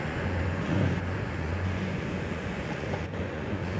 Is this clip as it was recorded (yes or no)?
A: no